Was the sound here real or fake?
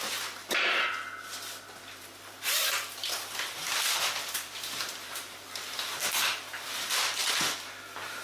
real